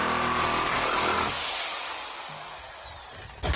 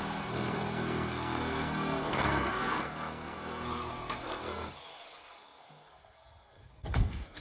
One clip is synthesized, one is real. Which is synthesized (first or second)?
second